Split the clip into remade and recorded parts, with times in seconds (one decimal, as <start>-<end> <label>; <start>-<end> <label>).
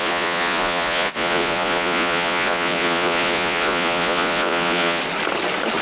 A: 0.0-5.0 remade; 5.0-5.8 recorded